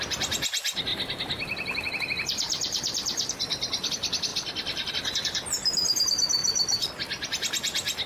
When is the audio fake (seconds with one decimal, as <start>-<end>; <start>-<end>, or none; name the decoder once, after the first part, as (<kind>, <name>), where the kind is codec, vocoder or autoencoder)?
0.9-3.9 (vocoder, BigVGAN v2); 4.3-4.9